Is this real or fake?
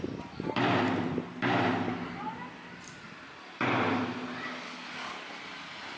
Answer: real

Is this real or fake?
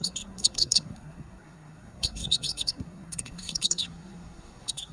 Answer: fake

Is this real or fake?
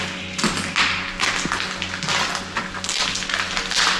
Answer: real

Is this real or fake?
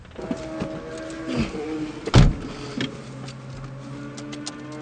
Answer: real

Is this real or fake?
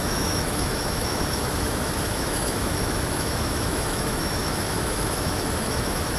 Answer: fake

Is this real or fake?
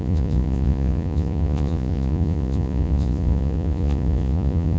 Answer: fake